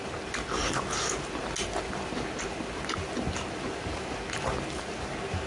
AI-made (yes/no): no